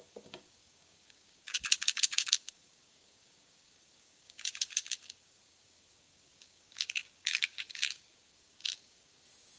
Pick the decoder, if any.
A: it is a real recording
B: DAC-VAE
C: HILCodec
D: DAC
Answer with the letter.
D